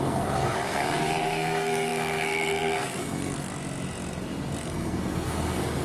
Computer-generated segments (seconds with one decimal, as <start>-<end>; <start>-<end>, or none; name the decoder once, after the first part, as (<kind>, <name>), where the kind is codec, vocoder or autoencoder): 0.0-3.5 (codec, SNAC); 4.6-5.8